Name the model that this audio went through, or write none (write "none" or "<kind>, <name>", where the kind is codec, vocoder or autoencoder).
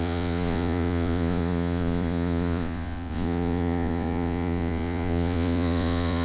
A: vocoder, Vocos